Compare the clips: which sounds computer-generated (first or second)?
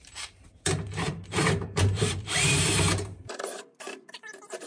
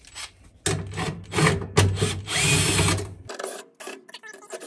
first